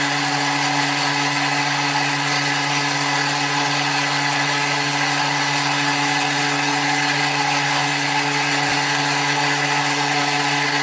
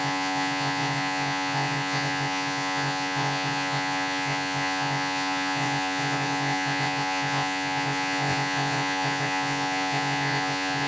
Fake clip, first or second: second